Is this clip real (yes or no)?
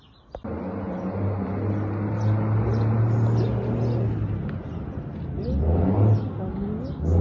yes